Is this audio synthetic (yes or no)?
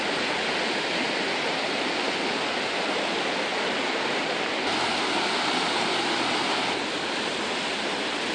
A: no